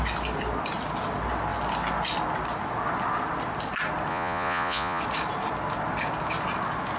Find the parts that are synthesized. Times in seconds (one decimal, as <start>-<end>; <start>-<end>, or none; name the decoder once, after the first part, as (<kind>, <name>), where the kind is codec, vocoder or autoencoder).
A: 4.1-5.0 (vocoder, Vocos)